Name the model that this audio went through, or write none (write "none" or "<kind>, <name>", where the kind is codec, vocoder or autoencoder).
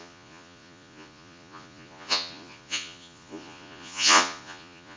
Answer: vocoder, Vocos